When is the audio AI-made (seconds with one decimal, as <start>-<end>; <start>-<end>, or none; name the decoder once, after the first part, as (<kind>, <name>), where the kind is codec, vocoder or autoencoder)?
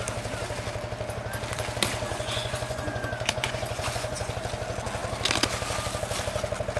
2.1-4.3 (vocoder, Vocos)